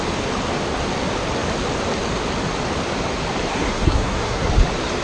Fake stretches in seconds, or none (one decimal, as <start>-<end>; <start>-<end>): 3.5-4.5